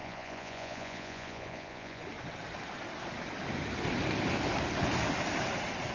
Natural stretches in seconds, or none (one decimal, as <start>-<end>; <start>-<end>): 2.0-5.9